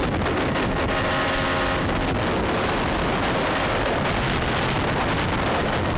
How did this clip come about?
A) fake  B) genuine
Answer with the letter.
B